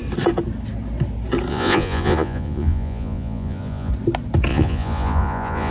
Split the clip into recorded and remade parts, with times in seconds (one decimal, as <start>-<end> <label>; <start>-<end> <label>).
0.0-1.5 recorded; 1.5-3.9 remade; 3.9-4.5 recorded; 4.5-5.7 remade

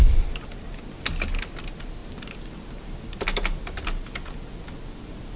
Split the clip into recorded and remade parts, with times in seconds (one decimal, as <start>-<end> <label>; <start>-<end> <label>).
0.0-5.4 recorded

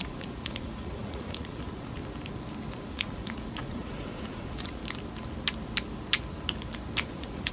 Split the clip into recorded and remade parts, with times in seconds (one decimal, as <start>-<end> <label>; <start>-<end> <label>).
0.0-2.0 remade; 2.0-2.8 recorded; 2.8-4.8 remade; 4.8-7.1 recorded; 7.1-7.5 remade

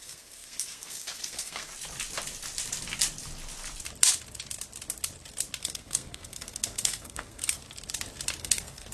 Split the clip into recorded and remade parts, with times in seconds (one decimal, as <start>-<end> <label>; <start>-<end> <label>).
0.0-1.7 remade; 1.7-5.6 recorded; 5.6-7.6 remade; 7.6-8.4 recorded; 8.4-8.9 remade

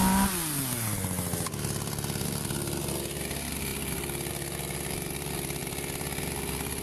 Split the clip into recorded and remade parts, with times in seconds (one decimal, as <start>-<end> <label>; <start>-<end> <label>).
0.0-1.6 recorded; 1.6-6.8 remade

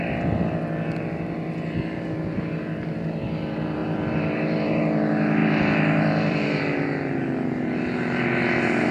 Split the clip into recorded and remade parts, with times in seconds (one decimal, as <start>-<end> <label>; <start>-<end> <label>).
0.0-3.8 recorded; 3.8-4.8 remade; 4.8-5.4 recorded; 5.4-6.6 remade; 6.6-8.9 recorded

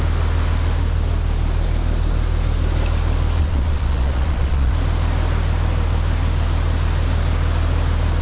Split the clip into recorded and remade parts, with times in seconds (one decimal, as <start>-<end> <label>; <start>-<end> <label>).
0.0-3.4 recorded; 3.4-4.7 remade; 4.7-8.2 recorded

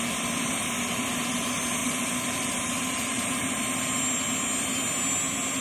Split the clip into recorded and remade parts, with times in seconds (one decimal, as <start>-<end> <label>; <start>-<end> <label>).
0.0-1.8 recorded; 1.8-3.3 remade; 3.3-5.6 recorded